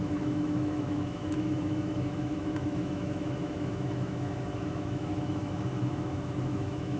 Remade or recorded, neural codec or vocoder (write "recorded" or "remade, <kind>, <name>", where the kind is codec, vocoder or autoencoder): remade, autoencoder, DAC-VAE